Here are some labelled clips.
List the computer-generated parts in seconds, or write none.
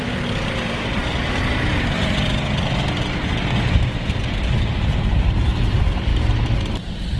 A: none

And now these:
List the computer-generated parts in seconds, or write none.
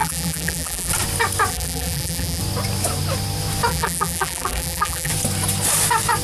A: 0.0-0.9 (vocoder, BigVGAN v2); 1.5-2.4; 3.7-5.1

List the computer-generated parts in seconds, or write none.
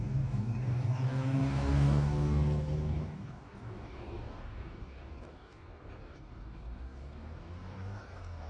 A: 0.0-8.5 (codec, DAC)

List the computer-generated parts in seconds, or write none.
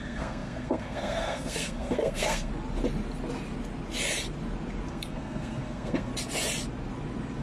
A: 0.0-2.5 (codec, SNAC); 4.9-6.1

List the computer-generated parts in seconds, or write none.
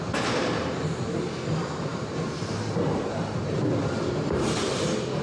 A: 1.9-5.2 (vocoder, BigVGAN v2)